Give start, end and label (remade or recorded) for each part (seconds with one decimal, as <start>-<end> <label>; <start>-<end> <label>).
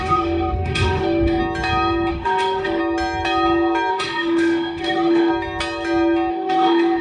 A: 0.0-1.4 remade; 1.4-2.1 recorded; 2.1-2.8 remade; 2.8-3.9 recorded; 3.9-5.3 remade; 5.3-6.3 recorded; 6.3-7.0 remade